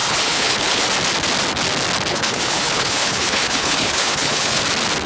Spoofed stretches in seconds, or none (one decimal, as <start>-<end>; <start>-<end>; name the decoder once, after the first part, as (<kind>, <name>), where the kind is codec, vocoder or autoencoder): 0.0-0.8 (codec, HILCodec); 2.1-4.6